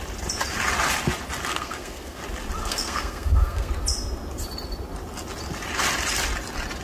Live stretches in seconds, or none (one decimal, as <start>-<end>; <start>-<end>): 0.0-1.5; 2.2-2.6; 3.7-6.8